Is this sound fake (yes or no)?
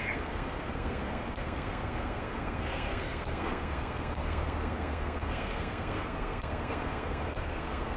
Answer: yes